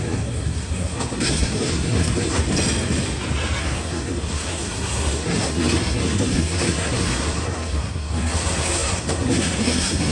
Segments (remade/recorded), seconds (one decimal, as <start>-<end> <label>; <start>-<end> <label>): 0.0-2.4 remade; 2.4-3.6 recorded; 3.6-10.1 remade